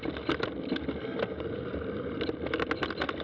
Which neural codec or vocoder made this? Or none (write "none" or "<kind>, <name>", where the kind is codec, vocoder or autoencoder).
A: none